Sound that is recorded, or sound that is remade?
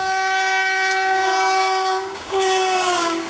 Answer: remade